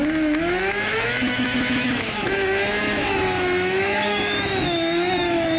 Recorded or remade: remade